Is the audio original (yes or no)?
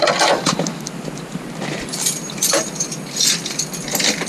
yes